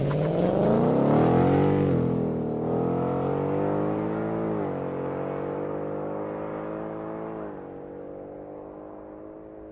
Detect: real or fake real